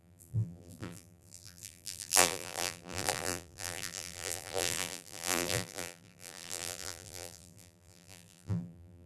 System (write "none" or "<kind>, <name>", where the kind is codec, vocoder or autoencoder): vocoder, BigVGAN v2